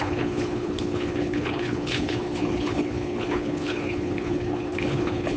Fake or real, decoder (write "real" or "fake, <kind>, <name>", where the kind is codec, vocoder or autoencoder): fake, codec, HILCodec